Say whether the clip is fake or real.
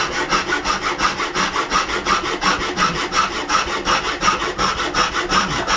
real